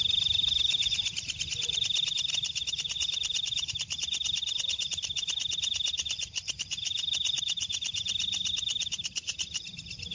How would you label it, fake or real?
real